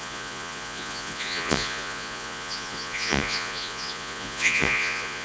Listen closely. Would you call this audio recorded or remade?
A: remade